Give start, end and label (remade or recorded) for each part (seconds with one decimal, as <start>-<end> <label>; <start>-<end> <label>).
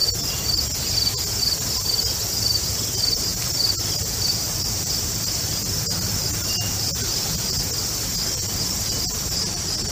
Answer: 0.0-3.3 recorded; 3.3-7.7 remade; 7.7-8.4 recorded; 8.4-9.0 remade; 9.0-9.9 recorded